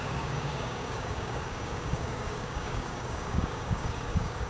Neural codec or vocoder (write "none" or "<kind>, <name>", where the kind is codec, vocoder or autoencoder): codec, DAC